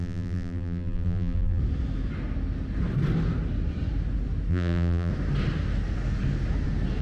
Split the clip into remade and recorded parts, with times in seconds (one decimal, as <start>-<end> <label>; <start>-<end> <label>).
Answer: 0.0-1.6 remade; 1.6-4.5 recorded; 4.5-5.1 remade; 5.1-7.0 recorded